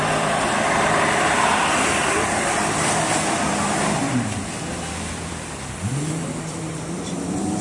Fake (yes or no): yes